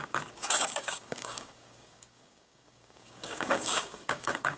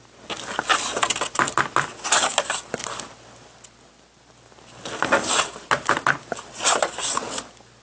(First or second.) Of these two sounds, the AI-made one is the first